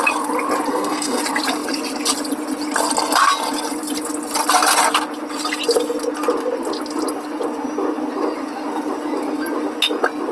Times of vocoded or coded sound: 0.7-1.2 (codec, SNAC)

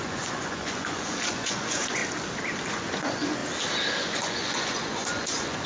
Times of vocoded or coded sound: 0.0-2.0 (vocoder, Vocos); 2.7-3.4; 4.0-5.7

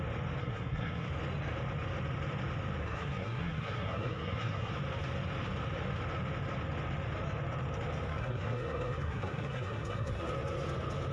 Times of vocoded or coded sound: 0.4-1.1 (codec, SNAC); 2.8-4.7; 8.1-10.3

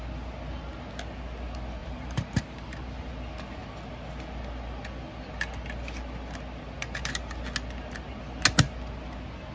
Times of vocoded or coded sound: 1.8-3.1 (vocoder, BigVGAN v2)

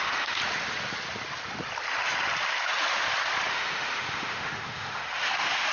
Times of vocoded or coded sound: 0.0-0.4 (autoencoder, DAC-VAE); 3.5-5.7